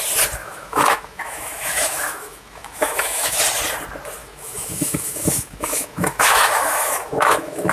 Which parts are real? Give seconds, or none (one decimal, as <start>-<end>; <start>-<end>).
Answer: 0.0-0.4; 3.4-4.2